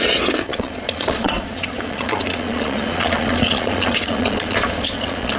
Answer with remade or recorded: remade